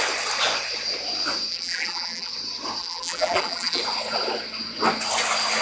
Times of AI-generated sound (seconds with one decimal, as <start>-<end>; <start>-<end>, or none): 1.5-2.3; 2.8-3.8